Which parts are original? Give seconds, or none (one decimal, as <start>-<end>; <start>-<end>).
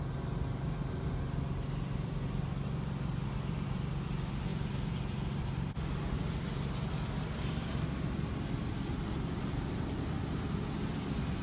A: 0.0-11.4